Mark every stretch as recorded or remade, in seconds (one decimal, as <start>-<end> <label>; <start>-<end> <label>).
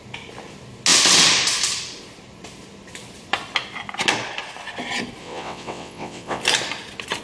0.0-5.2 recorded; 5.2-6.4 remade; 6.4-7.2 recorded